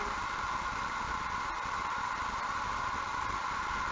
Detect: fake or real real